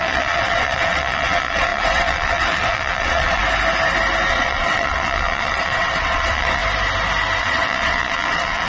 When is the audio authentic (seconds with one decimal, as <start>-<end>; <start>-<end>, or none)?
3.4-4.3; 6.6-7.4